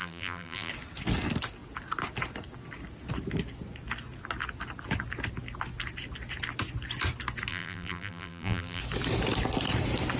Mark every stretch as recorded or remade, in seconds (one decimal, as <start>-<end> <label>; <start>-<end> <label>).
0.0-0.7 remade; 0.7-7.5 recorded; 7.5-8.8 remade; 8.8-10.2 recorded